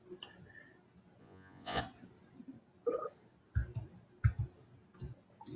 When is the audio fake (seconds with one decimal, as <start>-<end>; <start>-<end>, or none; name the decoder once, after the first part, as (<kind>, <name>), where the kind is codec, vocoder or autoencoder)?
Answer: 1.2-1.8 (vocoder, Vocos)